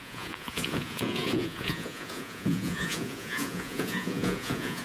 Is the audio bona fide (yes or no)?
no